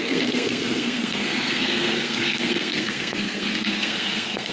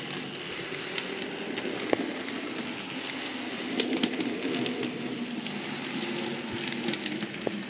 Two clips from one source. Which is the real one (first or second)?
second